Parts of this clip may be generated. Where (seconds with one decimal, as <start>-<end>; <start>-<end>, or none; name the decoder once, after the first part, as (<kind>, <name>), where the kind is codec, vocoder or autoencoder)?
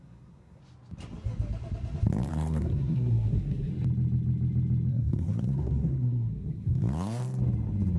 0.0-0.6 (codec, SNAC); 2.3-3.7; 4.9-7.2